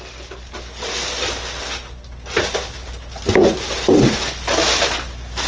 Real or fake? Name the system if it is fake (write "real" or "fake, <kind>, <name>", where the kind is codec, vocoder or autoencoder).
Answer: real